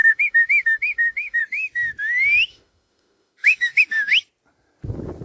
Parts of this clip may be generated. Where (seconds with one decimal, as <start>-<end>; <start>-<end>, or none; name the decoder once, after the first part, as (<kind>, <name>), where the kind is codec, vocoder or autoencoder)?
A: 0.0-1.4 (autoencoder, DAC-VAE); 2.5-3.8